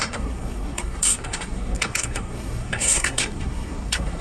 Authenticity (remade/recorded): remade